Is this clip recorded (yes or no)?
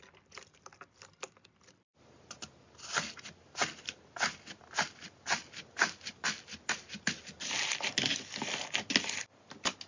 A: yes